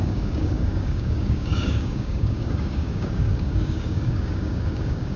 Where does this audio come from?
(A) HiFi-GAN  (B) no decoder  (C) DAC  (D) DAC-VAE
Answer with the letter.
C